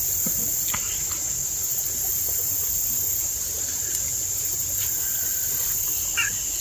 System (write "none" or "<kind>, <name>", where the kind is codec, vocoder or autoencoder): none